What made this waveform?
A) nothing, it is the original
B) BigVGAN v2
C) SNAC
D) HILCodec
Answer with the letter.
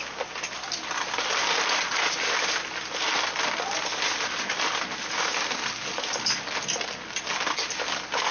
A